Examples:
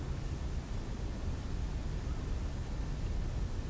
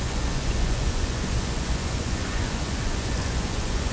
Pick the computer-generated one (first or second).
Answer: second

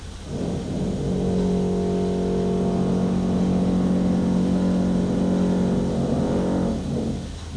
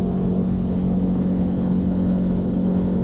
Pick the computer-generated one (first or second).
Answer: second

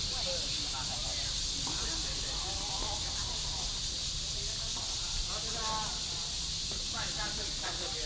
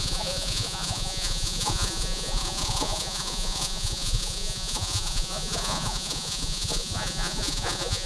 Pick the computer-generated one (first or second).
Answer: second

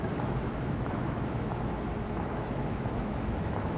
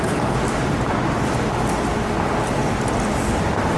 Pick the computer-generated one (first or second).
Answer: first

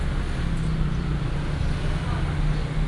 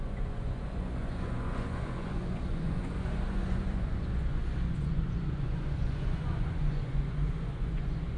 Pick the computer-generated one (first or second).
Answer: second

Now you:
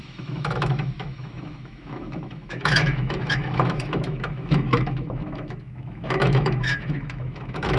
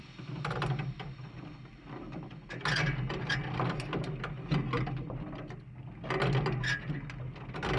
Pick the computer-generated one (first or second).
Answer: first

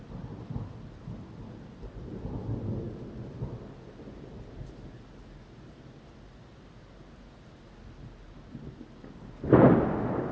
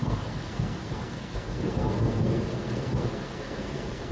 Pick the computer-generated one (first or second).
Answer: second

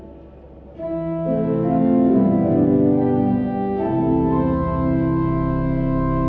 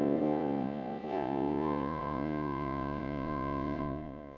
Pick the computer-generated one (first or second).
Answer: second